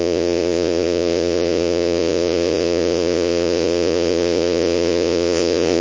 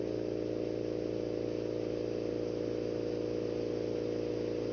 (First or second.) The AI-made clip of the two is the first